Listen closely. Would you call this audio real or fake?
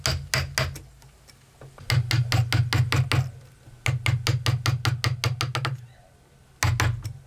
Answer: real